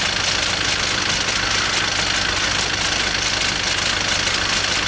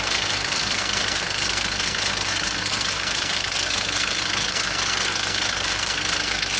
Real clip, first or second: first